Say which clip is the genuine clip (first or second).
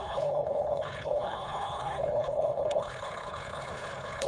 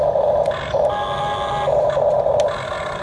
second